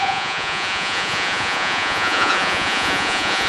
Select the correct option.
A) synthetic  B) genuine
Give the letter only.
A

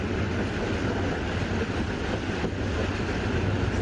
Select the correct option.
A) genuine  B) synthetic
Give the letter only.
A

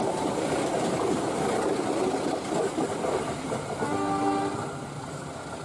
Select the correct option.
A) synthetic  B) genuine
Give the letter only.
B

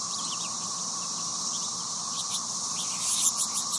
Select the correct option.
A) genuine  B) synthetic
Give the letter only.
B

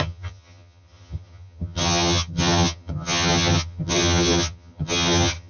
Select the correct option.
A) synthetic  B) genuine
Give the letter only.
A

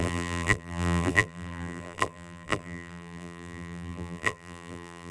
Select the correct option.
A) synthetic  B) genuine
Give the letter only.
A